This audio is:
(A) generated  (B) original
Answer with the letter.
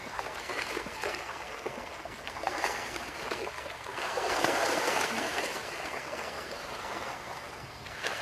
A